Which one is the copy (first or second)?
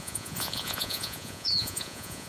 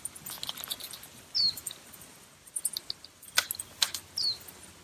first